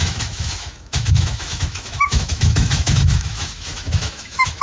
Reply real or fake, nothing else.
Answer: fake